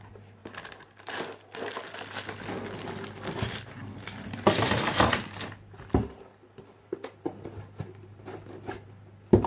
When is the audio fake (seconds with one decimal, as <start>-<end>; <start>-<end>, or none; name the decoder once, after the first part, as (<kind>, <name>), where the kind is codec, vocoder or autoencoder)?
0.4-2.5 (vocoder, BigVGAN v2)